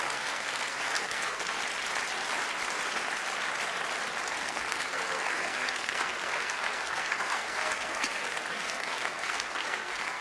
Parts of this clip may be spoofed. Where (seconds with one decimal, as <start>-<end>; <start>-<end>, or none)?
0.0-1.6; 4.3-10.2